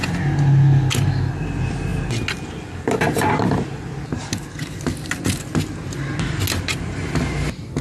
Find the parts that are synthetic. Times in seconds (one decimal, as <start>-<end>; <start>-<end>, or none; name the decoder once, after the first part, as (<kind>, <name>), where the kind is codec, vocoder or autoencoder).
none